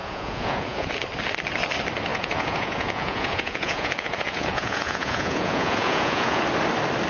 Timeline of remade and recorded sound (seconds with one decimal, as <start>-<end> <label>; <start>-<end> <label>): 0.0-0.9 remade; 0.9-2.1 recorded; 2.1-6.4 remade; 6.4-7.1 recorded